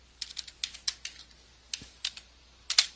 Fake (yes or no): no